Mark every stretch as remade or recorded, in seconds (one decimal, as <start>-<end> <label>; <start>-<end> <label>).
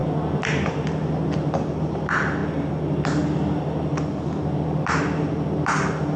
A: 0.0-6.2 recorded